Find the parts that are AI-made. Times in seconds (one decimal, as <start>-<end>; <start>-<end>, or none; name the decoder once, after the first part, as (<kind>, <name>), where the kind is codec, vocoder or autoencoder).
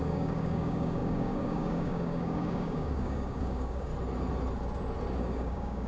0.0-3.9 (codec, DAC); 5.2-5.9